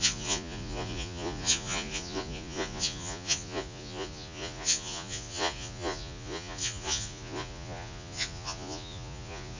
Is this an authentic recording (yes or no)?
no